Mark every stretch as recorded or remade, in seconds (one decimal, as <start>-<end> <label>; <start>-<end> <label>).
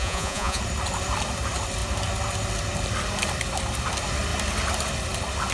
0.0-0.6 remade; 0.6-5.5 recorded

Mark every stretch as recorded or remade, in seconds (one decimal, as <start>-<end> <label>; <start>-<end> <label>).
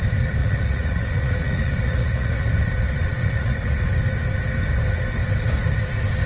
0.0-0.4 recorded; 0.4-2.5 remade; 2.5-3.2 recorded; 3.2-3.9 remade; 3.9-6.3 recorded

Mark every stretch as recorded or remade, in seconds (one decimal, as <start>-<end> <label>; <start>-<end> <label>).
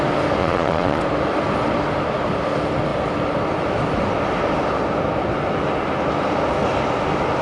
0.0-0.4 recorded; 0.4-1.0 remade; 1.0-7.4 recorded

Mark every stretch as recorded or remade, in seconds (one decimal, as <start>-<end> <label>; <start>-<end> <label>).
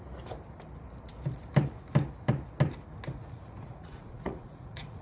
0.0-3.2 recorded; 3.2-5.0 remade